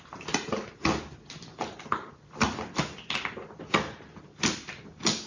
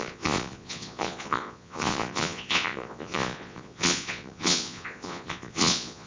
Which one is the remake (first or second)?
second